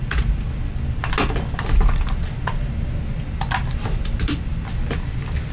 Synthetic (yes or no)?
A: no